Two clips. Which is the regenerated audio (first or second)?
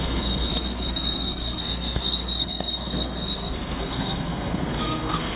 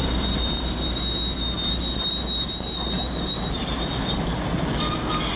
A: first